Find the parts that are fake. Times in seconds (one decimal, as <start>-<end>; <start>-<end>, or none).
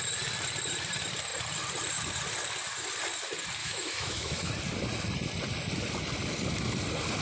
3.6-4.5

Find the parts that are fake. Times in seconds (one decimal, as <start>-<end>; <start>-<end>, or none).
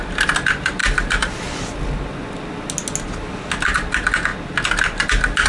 none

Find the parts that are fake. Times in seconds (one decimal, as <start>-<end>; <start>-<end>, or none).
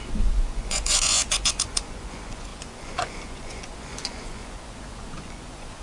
0.0-5.8